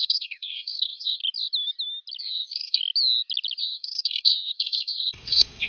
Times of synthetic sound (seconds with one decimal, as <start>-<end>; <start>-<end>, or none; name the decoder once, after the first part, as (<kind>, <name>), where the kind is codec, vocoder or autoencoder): 0.0-1.2 (codec, SNAC); 2.2-2.8; 3.6-5.7

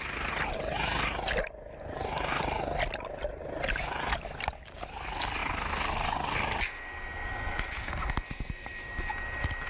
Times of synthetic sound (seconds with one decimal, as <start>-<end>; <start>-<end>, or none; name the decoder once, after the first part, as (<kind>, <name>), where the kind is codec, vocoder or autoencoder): none